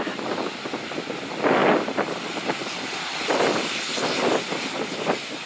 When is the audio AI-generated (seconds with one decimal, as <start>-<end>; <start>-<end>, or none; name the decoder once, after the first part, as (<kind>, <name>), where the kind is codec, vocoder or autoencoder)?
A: none